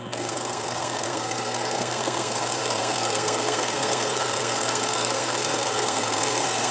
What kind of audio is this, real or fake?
fake